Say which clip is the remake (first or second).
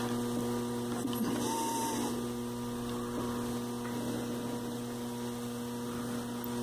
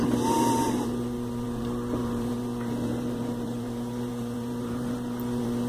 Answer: second